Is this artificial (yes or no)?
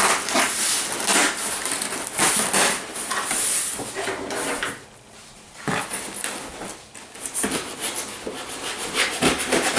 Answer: no